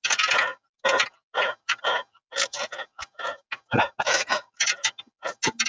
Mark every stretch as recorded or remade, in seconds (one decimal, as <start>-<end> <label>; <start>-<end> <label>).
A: 0.0-5.7 recorded